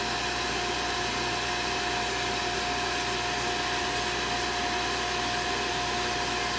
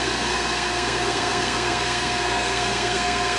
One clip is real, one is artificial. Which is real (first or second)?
first